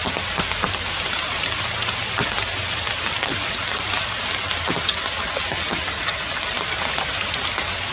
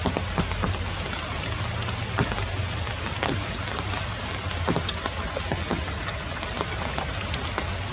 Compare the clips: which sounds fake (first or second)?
first